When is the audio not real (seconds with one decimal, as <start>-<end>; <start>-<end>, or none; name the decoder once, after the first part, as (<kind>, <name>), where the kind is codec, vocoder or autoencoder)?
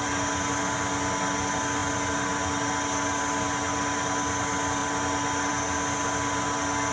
none